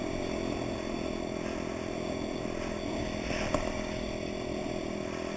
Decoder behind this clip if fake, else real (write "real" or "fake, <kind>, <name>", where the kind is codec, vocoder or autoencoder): real